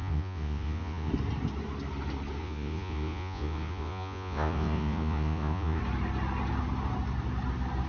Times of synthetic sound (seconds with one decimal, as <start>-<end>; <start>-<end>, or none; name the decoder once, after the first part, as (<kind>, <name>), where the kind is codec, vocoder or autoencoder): 0.0-1.1 (vocoder, Vocos); 2.4-5.8